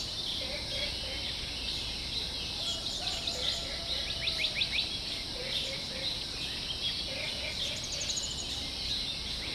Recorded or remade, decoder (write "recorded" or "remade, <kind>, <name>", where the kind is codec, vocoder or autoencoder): recorded